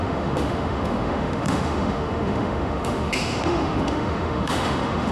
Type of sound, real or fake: fake